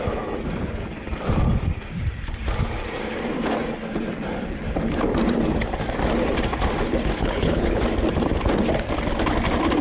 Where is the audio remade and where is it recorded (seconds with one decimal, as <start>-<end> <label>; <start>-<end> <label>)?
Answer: 0.0-7.2 recorded; 7.2-7.8 remade; 7.8-9.8 recorded